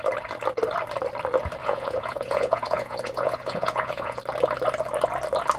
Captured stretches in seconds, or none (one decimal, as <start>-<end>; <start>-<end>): 0.0-1.6; 4.2-5.6